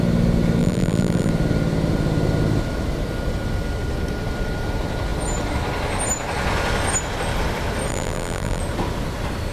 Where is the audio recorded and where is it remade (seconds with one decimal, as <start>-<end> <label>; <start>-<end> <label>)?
0.0-0.6 recorded; 0.6-1.3 remade; 1.3-7.9 recorded; 7.9-8.6 remade; 8.6-9.5 recorded